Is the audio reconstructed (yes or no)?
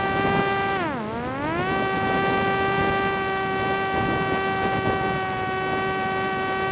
no